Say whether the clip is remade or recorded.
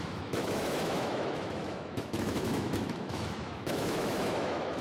remade